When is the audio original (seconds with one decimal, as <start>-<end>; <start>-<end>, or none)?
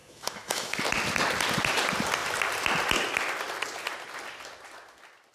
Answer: 0.8-5.3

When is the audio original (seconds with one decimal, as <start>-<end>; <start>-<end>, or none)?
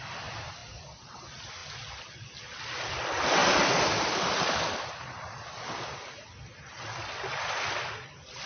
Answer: 0.0-8.5